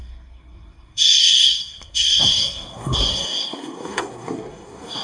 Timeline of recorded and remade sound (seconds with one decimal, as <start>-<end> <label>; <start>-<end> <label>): 0.0-5.0 remade